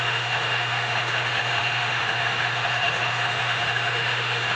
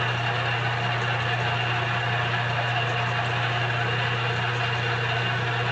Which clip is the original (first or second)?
second